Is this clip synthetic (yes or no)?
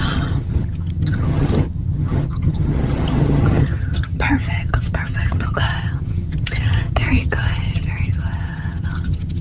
yes